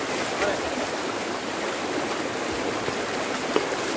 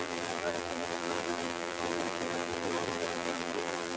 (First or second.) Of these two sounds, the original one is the first